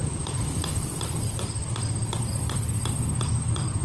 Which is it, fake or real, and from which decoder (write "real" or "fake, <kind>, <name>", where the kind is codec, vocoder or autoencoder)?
fake, vocoder, BigVGAN v2